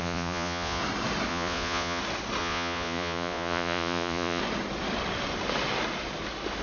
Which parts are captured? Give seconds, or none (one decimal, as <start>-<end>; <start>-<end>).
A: 0.8-1.3; 2.0-2.4; 4.4-6.6